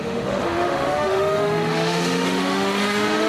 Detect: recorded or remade remade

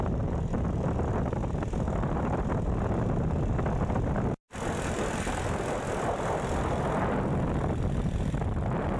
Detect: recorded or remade recorded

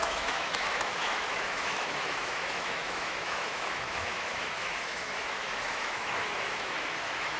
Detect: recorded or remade remade